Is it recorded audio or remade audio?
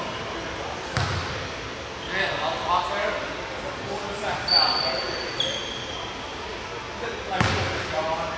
recorded